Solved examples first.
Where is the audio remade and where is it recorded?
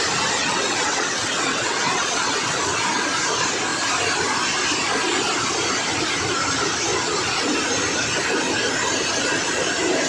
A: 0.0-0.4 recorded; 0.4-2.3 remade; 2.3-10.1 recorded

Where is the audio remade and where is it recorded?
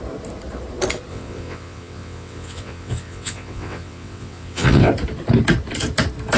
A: 0.0-1.1 recorded; 1.1-4.9 remade; 4.9-6.4 recorded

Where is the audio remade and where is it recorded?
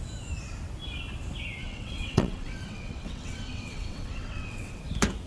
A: 0.0-1.6 recorded; 1.6-4.8 remade; 4.8-5.3 recorded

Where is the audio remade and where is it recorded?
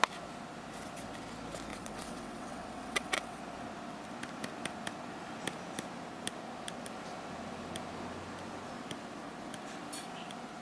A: 0.0-1.7 recorded; 1.7-3.4 remade; 3.4-10.6 recorded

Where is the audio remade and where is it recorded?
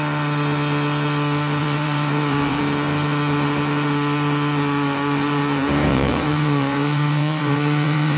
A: 0.0-1.6 recorded; 1.6-2.6 remade; 2.6-5.9 recorded; 5.9-8.2 remade